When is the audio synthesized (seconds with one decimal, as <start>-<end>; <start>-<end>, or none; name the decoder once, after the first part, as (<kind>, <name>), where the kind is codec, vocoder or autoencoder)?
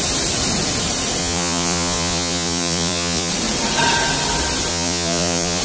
1.2-3.3 (vocoder, Vocos); 4.7-5.6